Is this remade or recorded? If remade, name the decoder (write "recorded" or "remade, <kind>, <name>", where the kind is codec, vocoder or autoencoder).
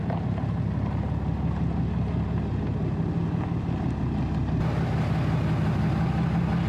recorded